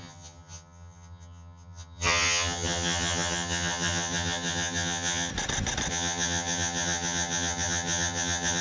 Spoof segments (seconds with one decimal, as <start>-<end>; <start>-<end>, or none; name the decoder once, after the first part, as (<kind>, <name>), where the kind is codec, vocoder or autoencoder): 0.0-5.3 (vocoder, HiFi-GAN); 5.9-8.6